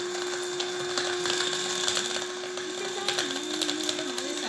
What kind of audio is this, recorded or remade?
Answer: recorded